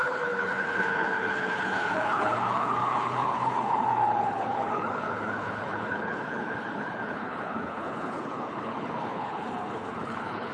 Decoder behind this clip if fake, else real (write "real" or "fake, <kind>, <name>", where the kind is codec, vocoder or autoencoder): fake, codec, HILCodec